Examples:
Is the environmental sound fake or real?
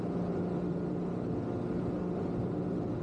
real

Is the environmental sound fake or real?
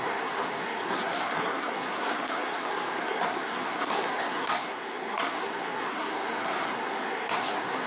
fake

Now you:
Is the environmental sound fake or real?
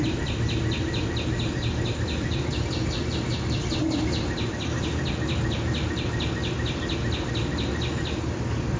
real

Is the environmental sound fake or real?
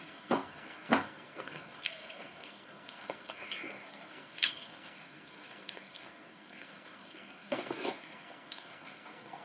fake